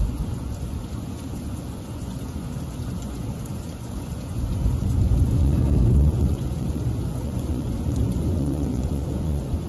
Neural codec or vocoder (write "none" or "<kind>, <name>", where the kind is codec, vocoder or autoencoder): vocoder, Vocos